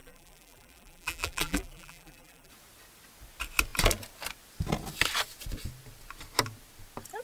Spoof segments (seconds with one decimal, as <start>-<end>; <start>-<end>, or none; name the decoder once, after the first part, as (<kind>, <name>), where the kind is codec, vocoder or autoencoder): 0.0-2.5 (vocoder, BigVGAN v2)